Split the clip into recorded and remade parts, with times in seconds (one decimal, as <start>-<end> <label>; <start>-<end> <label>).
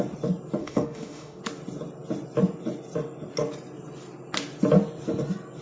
0.0-0.6 recorded; 0.6-1.4 remade; 1.4-5.6 recorded